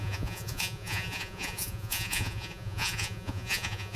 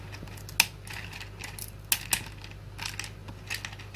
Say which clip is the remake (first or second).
first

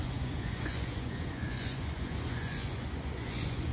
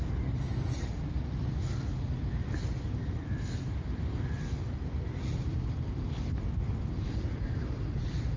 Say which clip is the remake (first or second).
first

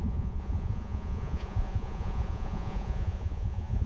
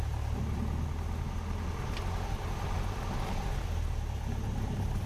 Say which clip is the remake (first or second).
first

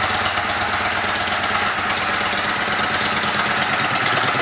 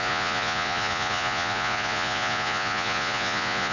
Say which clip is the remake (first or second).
second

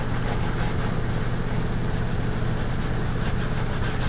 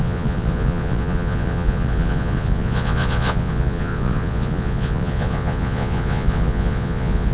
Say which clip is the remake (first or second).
second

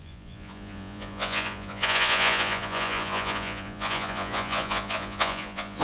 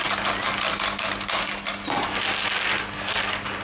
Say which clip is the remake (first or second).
first